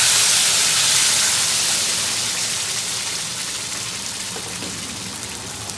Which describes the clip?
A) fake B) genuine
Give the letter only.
B